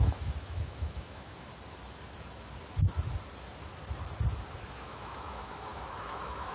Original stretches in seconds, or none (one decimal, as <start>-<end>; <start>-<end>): 1.5-4.7